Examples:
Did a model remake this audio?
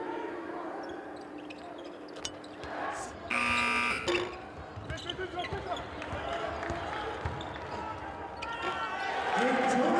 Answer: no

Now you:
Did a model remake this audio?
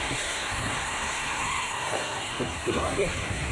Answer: yes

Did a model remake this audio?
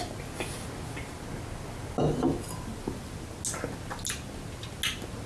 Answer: no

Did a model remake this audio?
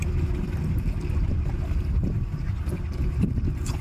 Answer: no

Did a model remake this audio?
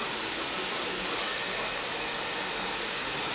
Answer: no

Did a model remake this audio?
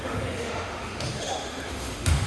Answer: yes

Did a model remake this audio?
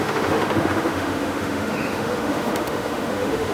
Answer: yes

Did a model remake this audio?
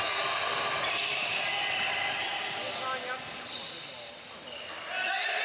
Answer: no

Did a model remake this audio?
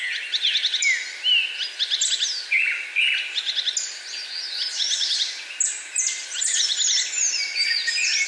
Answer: no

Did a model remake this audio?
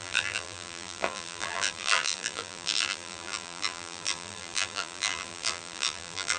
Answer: yes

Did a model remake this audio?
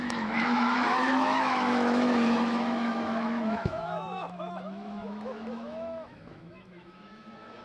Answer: yes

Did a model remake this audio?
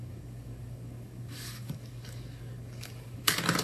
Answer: yes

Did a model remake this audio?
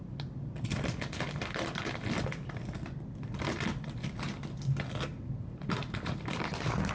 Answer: no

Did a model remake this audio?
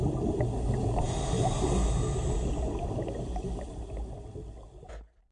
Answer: no